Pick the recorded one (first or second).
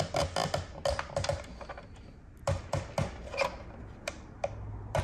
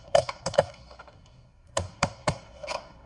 first